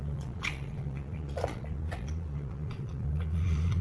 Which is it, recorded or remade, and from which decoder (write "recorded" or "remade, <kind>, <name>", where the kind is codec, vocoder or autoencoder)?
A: remade, vocoder, Vocos